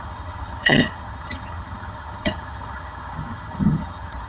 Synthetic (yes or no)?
yes